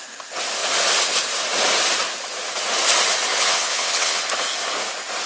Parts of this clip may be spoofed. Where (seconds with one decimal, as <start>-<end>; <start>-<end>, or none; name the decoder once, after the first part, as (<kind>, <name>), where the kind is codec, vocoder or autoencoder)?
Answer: 3.3-4.2 (vocoder, WaveNeXt)

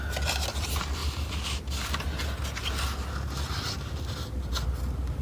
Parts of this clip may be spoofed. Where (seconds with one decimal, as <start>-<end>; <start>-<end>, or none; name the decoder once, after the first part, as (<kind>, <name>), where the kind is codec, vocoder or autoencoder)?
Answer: none

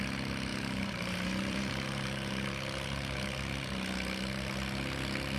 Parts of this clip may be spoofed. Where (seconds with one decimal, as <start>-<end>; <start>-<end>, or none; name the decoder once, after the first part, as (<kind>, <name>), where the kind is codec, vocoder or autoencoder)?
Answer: 0.5-2.5 (vocoder, BigVGAN v2)

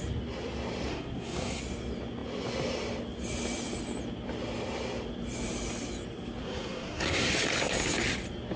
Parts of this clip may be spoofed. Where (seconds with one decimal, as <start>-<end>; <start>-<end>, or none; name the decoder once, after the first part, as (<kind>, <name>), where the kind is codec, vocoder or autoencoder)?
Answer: 0.9-1.6 (codec, SNAC); 6.4-7.3

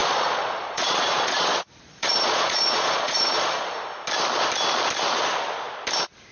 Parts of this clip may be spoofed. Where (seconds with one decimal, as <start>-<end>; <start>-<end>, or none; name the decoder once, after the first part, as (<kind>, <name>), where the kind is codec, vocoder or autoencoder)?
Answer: 0.0-3.7 (vocoder, Vocos)

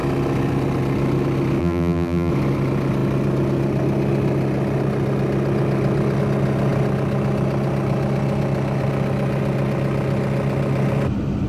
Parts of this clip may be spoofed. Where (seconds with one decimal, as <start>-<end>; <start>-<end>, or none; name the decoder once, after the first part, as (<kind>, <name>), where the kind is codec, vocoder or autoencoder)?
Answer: 1.6-2.3 (vocoder, BigVGAN v2)